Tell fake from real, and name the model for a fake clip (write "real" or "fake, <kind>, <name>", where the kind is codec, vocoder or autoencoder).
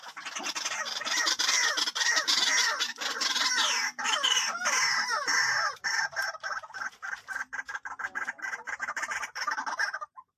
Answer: fake, vocoder, BigVGAN v2